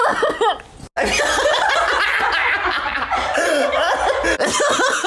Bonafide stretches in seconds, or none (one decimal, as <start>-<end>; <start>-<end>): 0.0-2.4; 3.5-5.1